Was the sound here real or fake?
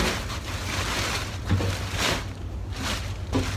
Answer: real